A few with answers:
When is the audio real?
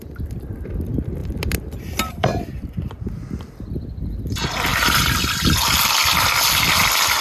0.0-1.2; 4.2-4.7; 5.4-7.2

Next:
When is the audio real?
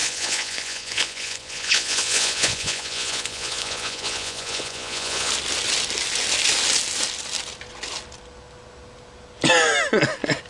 5.3-10.5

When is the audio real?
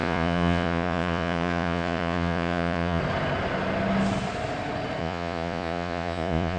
3.0-5.0